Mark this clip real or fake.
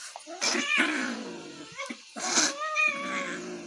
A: real